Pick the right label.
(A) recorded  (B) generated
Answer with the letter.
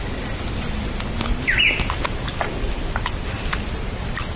A